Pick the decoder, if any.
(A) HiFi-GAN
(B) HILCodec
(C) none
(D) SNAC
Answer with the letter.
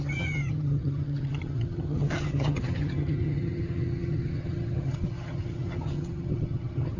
A